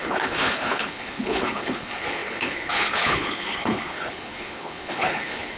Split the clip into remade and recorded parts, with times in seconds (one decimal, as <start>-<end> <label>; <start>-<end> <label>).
0.0-5.6 remade